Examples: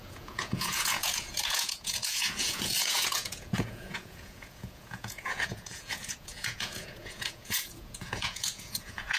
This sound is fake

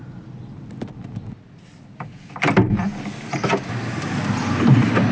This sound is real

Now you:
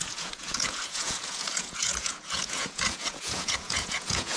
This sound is fake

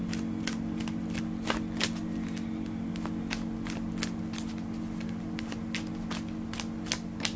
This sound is real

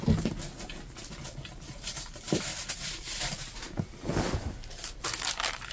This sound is real